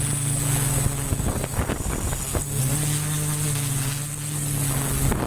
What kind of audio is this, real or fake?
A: real